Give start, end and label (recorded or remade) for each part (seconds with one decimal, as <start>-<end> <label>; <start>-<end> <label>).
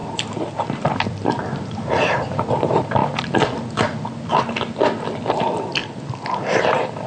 0.0-2.5 remade; 2.5-7.1 recorded